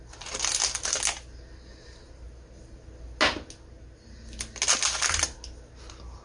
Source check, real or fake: real